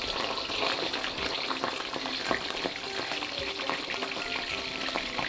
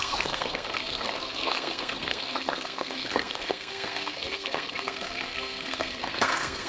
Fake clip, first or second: second